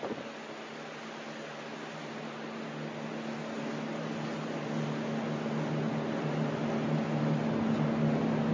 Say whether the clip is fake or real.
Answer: real